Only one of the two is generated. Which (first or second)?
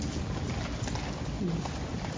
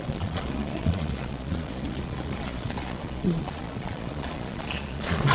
second